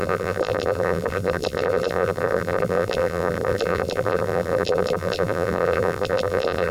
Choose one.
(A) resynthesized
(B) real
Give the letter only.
A